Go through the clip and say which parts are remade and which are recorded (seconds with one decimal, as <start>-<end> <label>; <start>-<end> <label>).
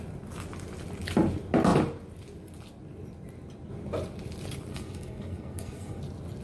0.0-4.7 recorded; 4.7-6.0 remade; 6.0-6.4 recorded